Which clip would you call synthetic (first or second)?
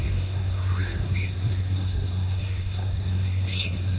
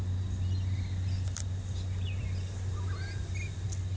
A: first